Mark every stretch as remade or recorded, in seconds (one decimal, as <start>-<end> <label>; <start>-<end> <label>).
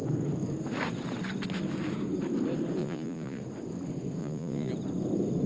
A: 0.0-2.8 recorded; 2.8-3.4 remade; 3.4-4.2 recorded; 4.2-4.7 remade; 4.7-5.5 recorded